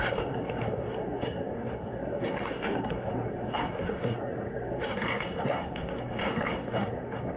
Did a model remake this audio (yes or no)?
yes